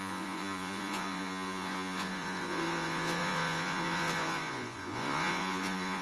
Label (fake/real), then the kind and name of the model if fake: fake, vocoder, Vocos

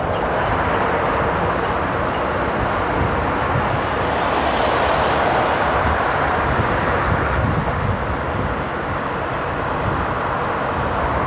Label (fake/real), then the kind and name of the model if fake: real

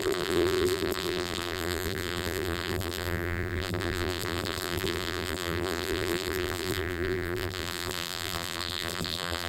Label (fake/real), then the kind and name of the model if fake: fake, vocoder, BigVGAN v2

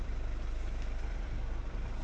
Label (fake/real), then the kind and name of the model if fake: fake, vocoder, BigVGAN v2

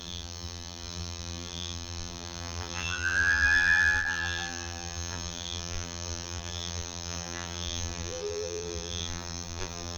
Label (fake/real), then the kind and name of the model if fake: fake, vocoder, BigVGAN v2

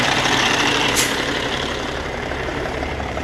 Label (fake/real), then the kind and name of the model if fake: fake, vocoder, BigVGAN v2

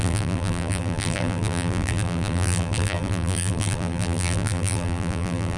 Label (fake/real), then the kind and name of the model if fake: fake, vocoder, BigVGAN v2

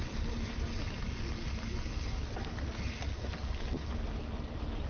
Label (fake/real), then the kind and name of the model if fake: real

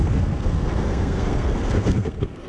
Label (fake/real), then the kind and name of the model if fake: fake, codec, SNAC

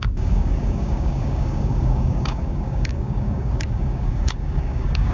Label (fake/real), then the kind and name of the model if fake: fake, codec, DAC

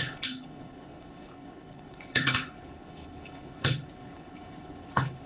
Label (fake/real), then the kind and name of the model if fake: fake, codec, HILCodec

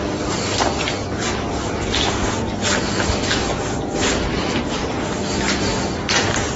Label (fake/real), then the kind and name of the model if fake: real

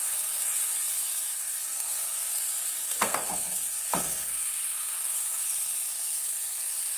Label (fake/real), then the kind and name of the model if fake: fake, codec, SNAC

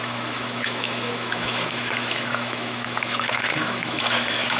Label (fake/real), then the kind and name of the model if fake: fake, autoencoder, DAC-VAE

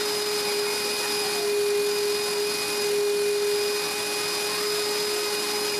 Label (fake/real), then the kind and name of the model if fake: real